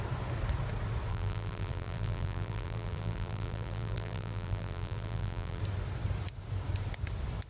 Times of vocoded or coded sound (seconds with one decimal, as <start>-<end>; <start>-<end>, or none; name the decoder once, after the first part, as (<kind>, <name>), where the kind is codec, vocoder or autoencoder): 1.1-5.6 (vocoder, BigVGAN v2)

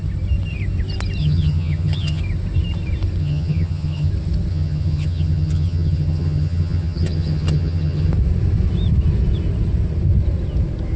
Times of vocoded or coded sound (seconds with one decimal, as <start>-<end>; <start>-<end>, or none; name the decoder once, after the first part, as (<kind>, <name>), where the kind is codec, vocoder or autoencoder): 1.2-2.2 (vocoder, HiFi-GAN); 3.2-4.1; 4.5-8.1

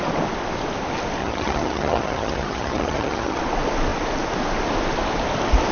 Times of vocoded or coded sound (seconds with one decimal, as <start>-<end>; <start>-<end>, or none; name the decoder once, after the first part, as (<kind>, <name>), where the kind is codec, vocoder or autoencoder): 1.2-3.4 (vocoder, HiFi-GAN)

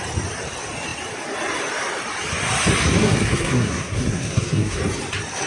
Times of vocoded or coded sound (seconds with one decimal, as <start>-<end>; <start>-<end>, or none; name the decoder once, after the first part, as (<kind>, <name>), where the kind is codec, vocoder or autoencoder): 3.0-4.8 (codec, SNAC)

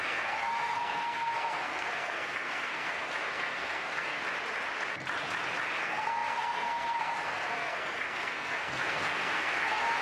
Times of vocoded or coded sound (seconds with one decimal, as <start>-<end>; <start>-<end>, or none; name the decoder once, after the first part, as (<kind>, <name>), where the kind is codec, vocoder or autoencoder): 0.0-4.2 (codec, SNAC); 5.8-10.0

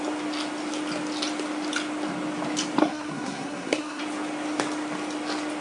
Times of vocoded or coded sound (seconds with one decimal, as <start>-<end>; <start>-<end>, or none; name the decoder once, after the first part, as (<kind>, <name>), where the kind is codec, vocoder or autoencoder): 2.8-4.0 (codec, SNAC)